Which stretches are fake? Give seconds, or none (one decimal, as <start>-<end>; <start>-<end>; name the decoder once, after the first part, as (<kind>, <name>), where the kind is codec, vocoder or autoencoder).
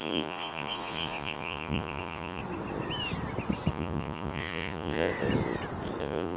0.0-2.4 (vocoder, Vocos); 3.7-5.1; 6.0-6.4